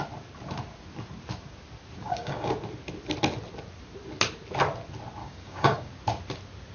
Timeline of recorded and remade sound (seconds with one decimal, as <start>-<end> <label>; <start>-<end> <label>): 0.0-2.0 recorded; 2.0-2.5 remade; 2.5-5.2 recorded; 5.2-5.9 remade; 5.9-6.7 recorded